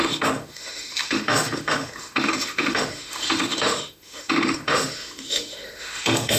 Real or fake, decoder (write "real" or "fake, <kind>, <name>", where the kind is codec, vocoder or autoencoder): fake, autoencoder, DAC-VAE